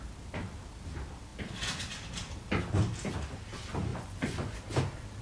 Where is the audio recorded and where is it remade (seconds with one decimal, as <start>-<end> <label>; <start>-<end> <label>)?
0.0-3.9 recorded; 3.9-4.5 remade; 4.5-5.2 recorded